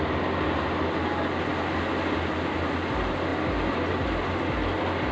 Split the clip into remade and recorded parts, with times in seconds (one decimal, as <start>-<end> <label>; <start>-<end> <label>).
0.0-5.1 recorded